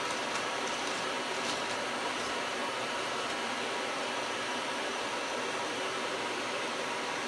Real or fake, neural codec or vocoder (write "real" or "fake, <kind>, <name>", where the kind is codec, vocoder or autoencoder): fake, vocoder, BigVGAN v2